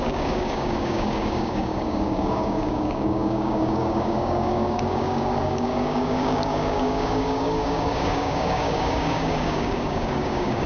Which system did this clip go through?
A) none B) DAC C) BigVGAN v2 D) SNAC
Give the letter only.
B